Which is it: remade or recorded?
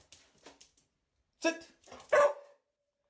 recorded